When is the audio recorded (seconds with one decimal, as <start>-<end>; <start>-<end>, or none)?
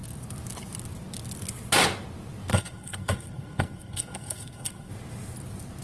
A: 0.0-2.5; 4.9-5.8